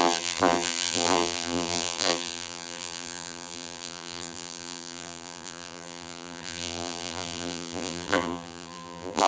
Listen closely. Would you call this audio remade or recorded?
remade